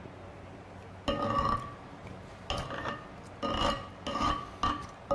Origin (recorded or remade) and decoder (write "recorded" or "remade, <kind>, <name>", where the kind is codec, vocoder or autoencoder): recorded